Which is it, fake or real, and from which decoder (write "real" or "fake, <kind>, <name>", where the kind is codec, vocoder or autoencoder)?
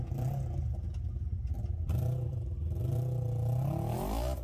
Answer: real